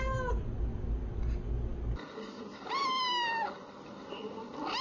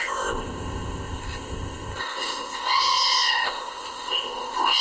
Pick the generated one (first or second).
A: second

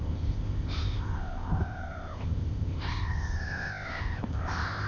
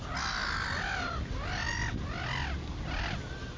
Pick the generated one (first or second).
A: first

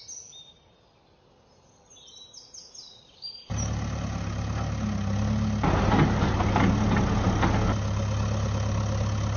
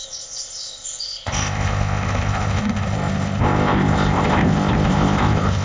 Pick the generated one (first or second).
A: second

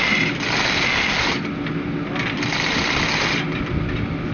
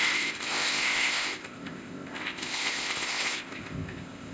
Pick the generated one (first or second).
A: second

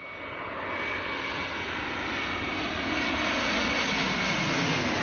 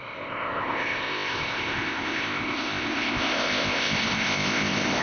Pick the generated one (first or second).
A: second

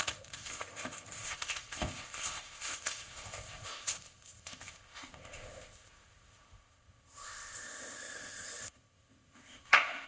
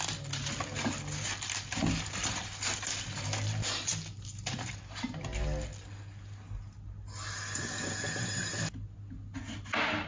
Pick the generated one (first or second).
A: first